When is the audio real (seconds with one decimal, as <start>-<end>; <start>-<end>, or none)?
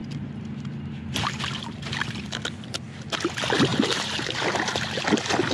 0.0-3.7; 5.1-5.5